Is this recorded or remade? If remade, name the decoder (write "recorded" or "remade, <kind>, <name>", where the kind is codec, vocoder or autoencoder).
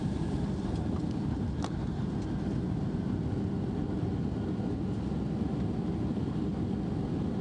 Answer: recorded